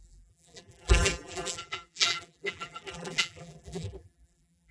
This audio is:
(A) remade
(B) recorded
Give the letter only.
A